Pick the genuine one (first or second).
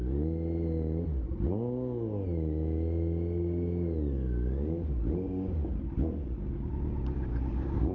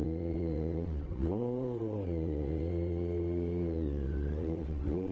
first